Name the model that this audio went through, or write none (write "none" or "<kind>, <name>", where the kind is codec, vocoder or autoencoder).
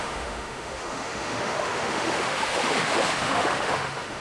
autoencoder, DAC-VAE